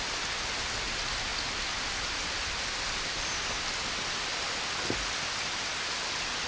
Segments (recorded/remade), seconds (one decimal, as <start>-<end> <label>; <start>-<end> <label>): 0.0-6.5 recorded

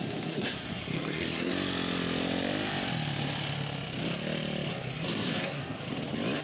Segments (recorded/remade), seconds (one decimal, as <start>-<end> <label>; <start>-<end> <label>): 0.0-1.5 remade; 1.5-4.7 recorded; 4.7-5.8 remade; 5.8-6.4 recorded

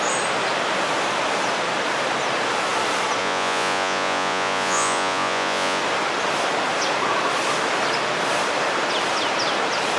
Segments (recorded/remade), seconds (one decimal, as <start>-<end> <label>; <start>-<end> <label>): 0.0-3.2 recorded; 3.2-5.8 remade; 5.8-10.0 recorded

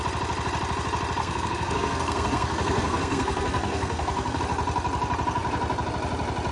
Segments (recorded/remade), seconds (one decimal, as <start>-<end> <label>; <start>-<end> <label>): 0.0-1.2 recorded; 1.2-4.4 remade; 4.4-6.5 recorded